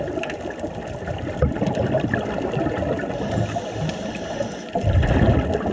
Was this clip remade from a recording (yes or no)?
no